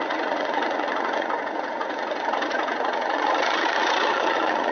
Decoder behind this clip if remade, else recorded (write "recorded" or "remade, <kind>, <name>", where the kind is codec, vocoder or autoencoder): remade, vocoder, Vocos